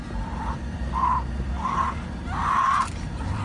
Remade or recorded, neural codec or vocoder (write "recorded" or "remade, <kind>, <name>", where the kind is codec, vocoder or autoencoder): remade, vocoder, BigVGAN v2